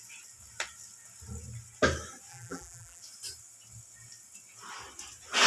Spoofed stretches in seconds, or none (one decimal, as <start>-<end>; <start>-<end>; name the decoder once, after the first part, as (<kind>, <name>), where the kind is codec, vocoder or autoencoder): 2.3-3.0 (vocoder, BigVGAN v2)